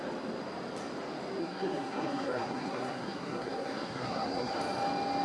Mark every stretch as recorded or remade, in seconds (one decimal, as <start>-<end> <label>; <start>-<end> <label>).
0.0-1.4 recorded; 1.4-4.5 remade; 4.5-5.2 recorded